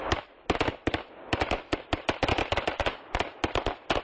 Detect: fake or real real